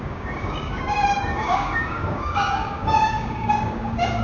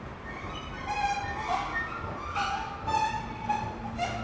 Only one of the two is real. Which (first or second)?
second